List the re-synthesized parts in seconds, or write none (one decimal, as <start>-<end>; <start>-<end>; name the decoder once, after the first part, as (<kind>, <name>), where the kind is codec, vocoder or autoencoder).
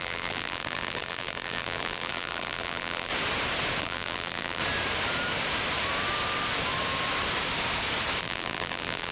0.0-3.1 (vocoder, BigVGAN v2); 3.8-4.6; 8.2-9.1